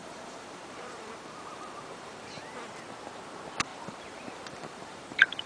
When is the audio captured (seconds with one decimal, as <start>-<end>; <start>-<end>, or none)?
2.4-3.7